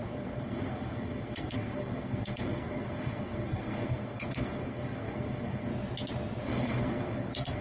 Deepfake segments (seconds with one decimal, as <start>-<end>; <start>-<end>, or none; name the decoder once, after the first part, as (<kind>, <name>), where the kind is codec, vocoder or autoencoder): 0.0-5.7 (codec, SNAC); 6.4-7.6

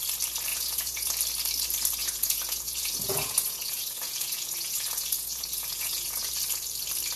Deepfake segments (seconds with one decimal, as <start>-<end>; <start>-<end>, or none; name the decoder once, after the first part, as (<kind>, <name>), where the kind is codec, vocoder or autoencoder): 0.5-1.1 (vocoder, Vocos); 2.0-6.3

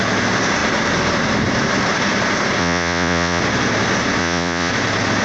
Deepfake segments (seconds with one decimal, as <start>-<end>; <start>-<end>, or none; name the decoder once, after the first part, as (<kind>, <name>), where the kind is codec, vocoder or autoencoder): 2.6-3.4 (vocoder, Vocos); 4.2-4.7